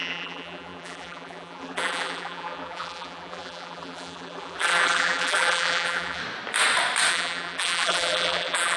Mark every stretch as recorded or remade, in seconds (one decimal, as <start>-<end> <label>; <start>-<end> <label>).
0.0-6.2 remade; 6.2-7.1 recorded; 7.1-8.8 remade